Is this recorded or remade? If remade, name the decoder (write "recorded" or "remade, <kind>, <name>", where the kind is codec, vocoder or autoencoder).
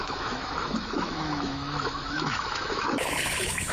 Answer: remade, autoencoder, DAC-VAE